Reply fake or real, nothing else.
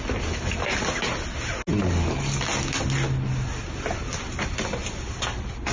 real